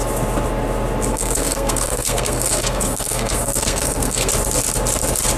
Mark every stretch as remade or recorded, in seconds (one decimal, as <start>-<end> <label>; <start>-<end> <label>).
0.0-1.1 recorded; 1.1-4.3 remade; 4.3-5.4 recorded